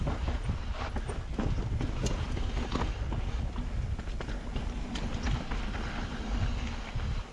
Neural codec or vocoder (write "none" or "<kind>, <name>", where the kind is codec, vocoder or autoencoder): none